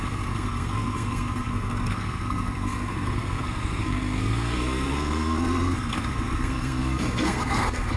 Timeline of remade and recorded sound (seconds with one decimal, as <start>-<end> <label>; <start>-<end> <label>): 0.0-8.0 remade